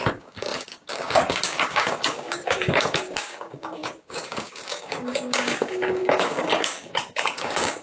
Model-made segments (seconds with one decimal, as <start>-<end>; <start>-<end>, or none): 0.0-7.8